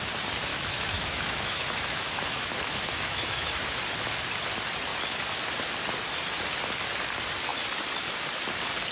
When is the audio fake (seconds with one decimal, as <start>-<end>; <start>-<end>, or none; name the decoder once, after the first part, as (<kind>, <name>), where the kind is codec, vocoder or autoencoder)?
0.5-3.8 (autoencoder, DAC-VAE)